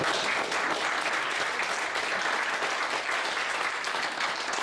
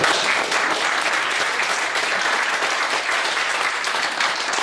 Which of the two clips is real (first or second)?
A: first